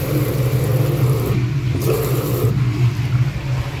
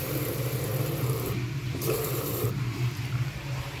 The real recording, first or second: first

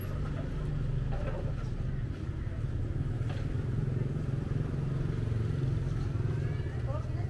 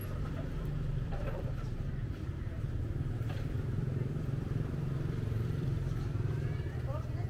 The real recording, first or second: first